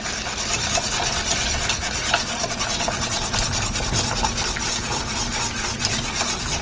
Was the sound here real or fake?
real